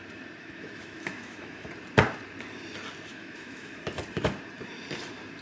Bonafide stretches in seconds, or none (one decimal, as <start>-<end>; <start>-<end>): 0.0-0.4; 1.7-3.1; 3.8-5.4